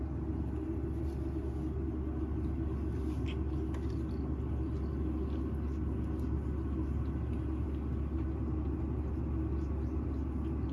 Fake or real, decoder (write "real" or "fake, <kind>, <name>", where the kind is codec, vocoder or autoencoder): real